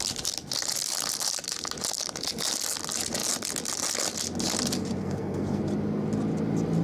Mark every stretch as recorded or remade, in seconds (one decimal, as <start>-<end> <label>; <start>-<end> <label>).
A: 0.0-5.0 recorded; 5.0-5.6 remade; 5.6-6.8 recorded